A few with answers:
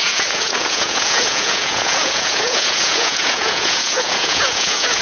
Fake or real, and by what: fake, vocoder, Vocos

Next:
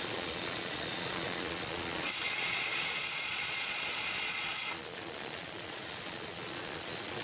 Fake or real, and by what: fake, vocoder, Vocos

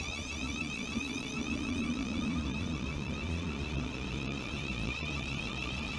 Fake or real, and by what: fake, vocoder, Vocos